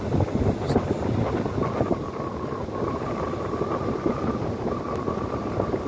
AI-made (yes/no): no